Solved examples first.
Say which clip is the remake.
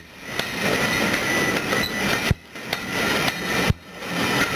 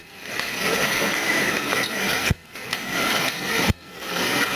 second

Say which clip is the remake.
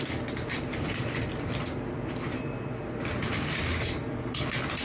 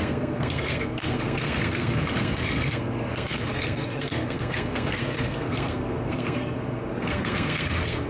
second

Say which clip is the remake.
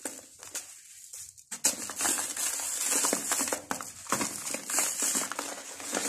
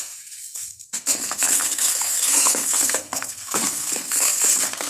second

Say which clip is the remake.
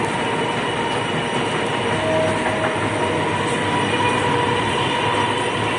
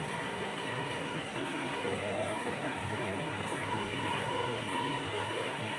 second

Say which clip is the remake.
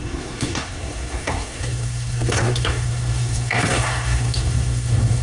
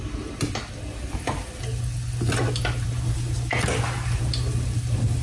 first